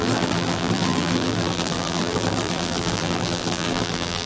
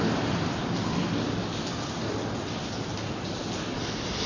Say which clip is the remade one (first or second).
first